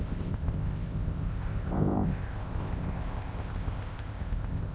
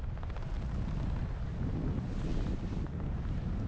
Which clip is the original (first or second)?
second